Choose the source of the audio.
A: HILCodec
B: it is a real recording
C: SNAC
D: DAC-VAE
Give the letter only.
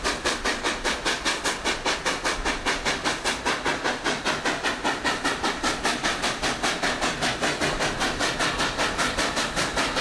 B